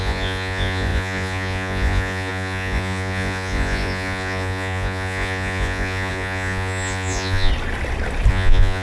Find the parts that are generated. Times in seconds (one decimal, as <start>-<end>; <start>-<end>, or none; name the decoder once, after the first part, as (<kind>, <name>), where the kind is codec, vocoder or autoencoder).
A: 0.0-7.5 (vocoder, Vocos); 8.3-8.8